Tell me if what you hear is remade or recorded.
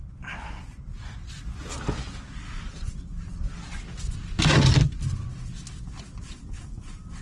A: recorded